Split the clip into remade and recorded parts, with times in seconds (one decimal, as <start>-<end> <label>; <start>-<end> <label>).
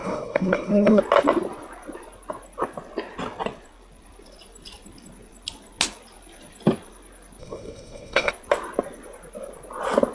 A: 0.0-1.0 remade; 1.0-7.4 recorded; 7.4-8.3 remade; 8.3-10.1 recorded